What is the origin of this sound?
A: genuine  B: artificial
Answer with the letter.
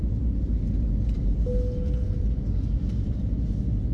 A